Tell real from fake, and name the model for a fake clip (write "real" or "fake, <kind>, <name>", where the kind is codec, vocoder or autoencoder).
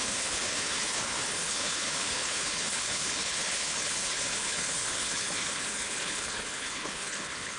fake, codec, HILCodec